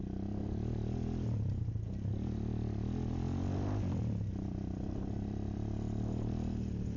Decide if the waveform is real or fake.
real